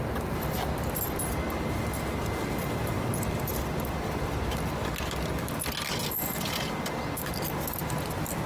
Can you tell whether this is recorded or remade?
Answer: recorded